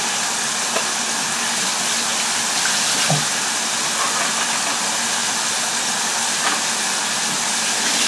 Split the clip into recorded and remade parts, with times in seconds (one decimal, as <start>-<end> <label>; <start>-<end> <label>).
0.0-8.1 recorded